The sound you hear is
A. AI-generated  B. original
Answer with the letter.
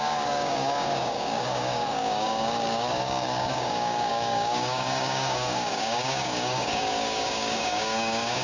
A